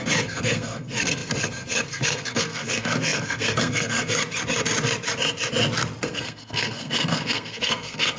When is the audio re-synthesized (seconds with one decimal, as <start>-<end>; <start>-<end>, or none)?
0.0-4.2; 6.0-8.2